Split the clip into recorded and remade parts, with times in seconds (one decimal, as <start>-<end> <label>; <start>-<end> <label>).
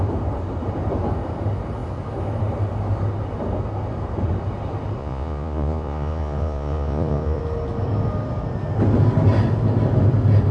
0.0-5.0 recorded; 5.0-7.4 remade; 7.4-10.5 recorded